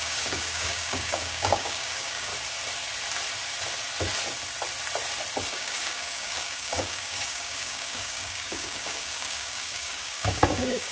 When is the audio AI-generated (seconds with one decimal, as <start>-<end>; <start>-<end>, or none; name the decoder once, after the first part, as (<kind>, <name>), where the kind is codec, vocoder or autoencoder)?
0.0-2.3 (codec, DAC); 5.5-10.9